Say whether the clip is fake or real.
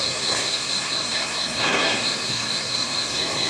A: fake